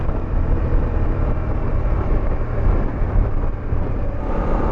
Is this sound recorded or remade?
remade